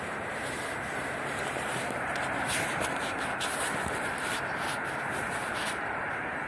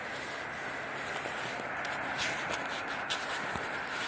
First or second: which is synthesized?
first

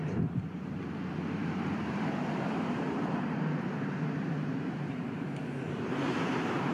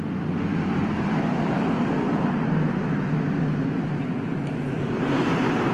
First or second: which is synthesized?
first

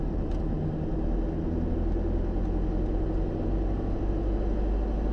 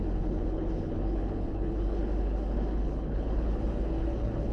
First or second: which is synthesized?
second